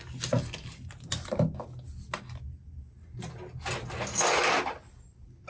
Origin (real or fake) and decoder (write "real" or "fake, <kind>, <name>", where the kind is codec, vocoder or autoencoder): real